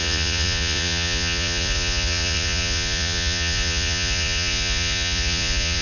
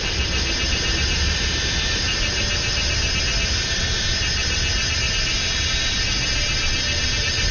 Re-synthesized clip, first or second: first